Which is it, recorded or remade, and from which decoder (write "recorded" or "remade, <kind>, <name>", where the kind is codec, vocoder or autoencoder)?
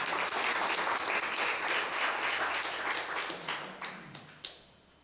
recorded